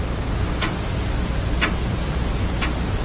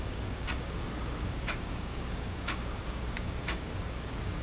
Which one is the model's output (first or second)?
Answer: second